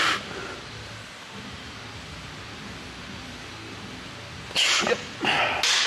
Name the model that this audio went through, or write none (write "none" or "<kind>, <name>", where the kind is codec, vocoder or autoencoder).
none